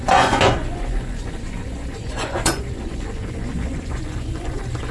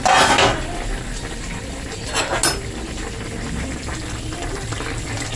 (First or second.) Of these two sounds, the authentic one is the second